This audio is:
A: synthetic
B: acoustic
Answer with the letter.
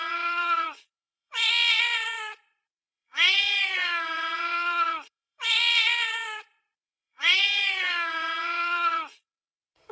A